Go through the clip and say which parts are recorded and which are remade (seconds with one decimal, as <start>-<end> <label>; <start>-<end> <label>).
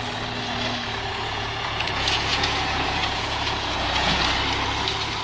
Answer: 0.0-1.1 recorded; 1.1-4.2 remade; 4.2-5.2 recorded